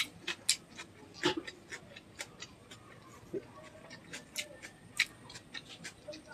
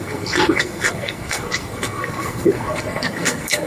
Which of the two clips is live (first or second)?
first